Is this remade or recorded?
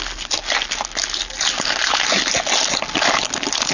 recorded